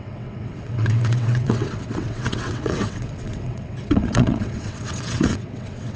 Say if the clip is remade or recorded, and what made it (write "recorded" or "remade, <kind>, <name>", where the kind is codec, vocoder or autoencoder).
remade, vocoder, WaveNeXt